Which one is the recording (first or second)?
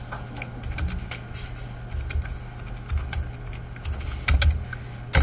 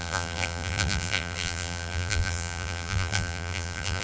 first